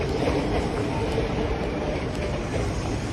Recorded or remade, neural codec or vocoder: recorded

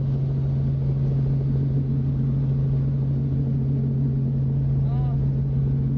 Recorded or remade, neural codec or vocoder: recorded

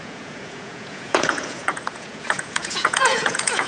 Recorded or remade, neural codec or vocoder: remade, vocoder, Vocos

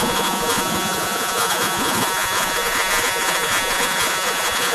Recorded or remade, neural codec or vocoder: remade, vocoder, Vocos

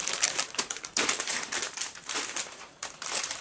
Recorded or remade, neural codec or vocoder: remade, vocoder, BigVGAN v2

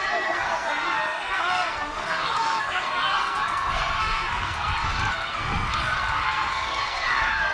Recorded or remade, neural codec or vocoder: remade, codec, SNAC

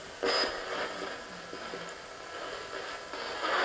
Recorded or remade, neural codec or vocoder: recorded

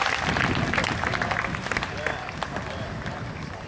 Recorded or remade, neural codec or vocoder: recorded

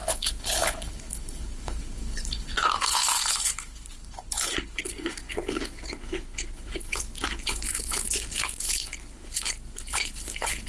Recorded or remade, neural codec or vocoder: remade, codec, HILCodec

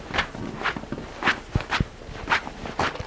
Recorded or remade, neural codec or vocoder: recorded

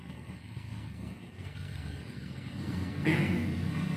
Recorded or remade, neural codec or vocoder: remade, codec, SNAC